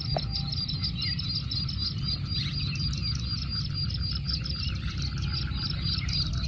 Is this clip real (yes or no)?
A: yes